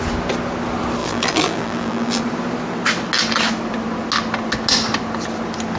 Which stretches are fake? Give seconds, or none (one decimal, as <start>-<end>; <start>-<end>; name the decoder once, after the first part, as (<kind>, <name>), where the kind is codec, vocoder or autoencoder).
1.0-2.2 (vocoder, BigVGAN v2)